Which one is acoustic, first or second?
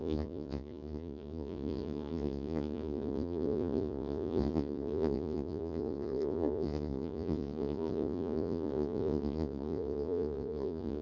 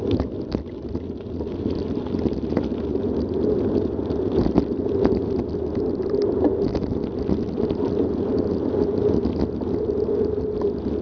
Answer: second